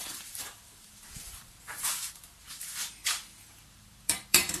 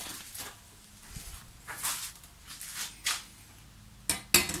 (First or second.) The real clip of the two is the second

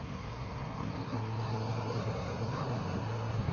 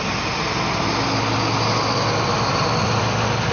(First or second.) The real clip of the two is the second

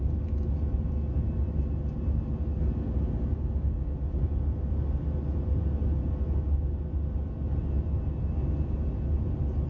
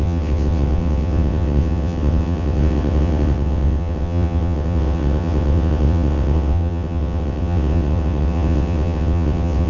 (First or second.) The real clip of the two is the first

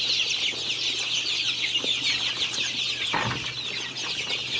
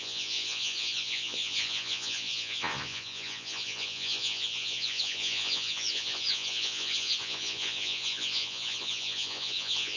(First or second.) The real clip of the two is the first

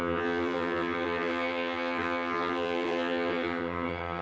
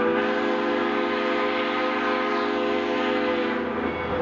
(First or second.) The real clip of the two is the second